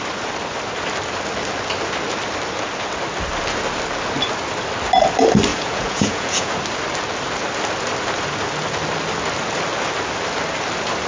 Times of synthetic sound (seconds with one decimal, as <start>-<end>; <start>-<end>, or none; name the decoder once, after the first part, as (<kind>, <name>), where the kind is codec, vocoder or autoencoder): 5.5-6.5 (vocoder, Vocos)